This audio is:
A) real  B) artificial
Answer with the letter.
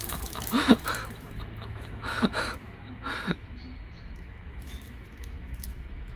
B